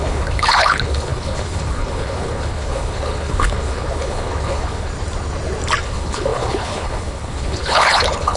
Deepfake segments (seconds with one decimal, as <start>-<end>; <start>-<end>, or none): 0.0-4.9; 5.8-8.4